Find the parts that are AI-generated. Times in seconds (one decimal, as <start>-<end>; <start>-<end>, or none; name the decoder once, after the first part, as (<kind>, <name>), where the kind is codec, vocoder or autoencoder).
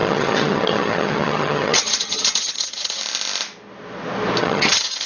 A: 0.0-3.0 (vocoder, HiFi-GAN); 4.4-5.1